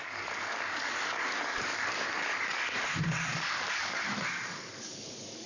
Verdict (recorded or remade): remade